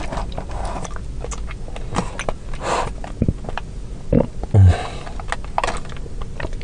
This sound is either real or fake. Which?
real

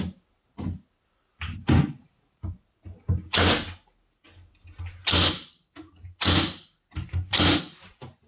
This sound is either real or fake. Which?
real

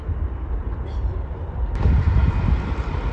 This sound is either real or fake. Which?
real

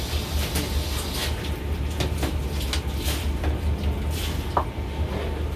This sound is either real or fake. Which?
real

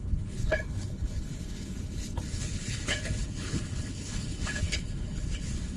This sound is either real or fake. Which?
fake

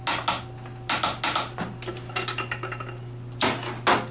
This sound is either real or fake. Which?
real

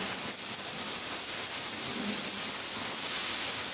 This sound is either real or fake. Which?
real